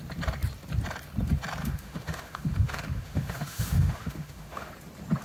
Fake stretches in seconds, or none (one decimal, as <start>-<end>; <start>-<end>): 1.6-4.7